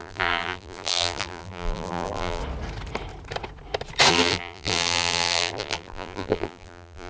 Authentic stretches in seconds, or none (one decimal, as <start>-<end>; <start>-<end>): 2.4-4.1